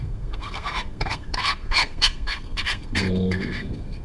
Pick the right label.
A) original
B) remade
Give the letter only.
B